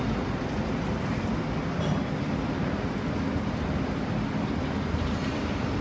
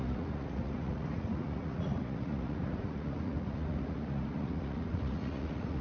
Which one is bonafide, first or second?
first